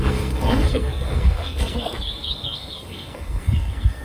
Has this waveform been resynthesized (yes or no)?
yes